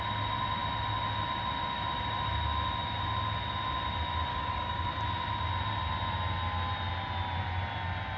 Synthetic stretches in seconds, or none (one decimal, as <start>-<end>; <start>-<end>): 4.3-4.9